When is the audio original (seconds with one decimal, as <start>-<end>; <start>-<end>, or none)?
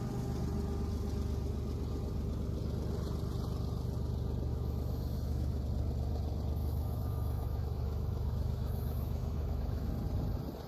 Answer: 0.0-4.5; 5.6-6.6; 9.9-10.7